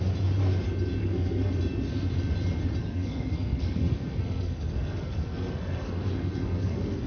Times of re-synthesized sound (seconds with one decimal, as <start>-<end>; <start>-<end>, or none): 1.0-1.5; 2.8-7.1